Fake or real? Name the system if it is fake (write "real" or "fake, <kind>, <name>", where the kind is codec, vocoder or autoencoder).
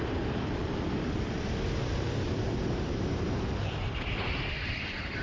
fake, vocoder, BigVGAN v2